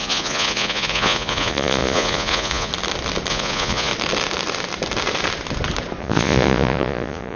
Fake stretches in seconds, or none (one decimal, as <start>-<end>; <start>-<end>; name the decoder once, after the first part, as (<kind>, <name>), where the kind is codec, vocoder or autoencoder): 0.0-2.7 (vocoder, Vocos); 3.3-3.9; 6.0-7.4